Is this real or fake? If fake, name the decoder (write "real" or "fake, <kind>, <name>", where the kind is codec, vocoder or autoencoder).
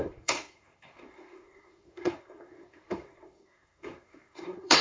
fake, codec, SNAC